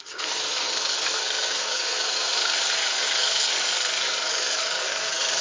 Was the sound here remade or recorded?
remade